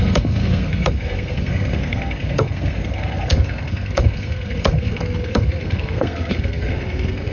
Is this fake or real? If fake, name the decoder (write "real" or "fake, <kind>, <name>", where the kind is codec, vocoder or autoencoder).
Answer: fake, codec, SNAC